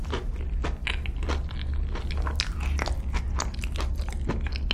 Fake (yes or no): no